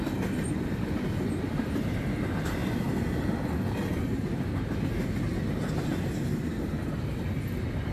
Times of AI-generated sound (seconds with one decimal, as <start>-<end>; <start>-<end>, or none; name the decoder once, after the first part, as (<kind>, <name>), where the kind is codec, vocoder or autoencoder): none